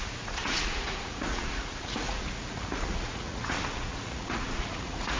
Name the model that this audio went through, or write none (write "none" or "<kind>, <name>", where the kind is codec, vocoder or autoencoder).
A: vocoder, Vocos